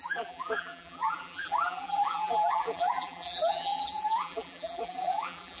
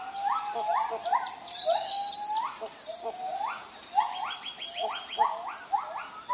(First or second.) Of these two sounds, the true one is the second